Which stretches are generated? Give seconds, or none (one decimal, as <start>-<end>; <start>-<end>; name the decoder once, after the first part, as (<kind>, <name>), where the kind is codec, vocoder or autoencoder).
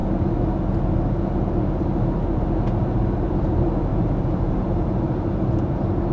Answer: 3.9-5.3 (vocoder, BigVGAN v2)